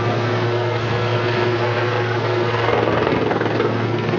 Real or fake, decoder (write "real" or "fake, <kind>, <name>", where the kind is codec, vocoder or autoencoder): fake, codec, SNAC